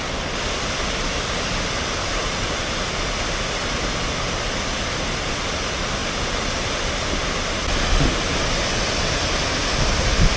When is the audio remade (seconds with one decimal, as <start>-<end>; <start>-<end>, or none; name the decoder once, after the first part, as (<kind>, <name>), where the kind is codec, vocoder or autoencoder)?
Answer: 2.2-5.5 (vocoder, BigVGAN v2); 8.7-10.4